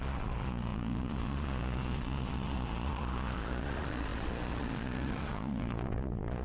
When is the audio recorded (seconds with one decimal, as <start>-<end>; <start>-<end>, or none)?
none